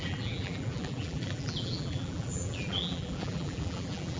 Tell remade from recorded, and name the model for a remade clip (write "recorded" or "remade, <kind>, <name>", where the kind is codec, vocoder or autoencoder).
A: remade, vocoder, BigVGAN v2